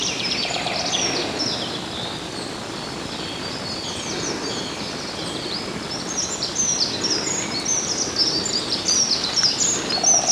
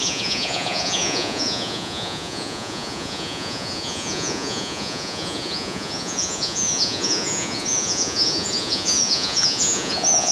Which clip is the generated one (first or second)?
second